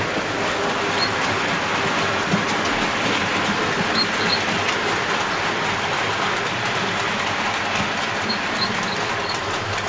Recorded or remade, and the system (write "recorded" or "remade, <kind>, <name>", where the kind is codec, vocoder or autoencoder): recorded